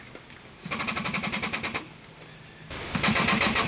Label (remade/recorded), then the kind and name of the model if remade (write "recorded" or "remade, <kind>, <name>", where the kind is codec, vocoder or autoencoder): recorded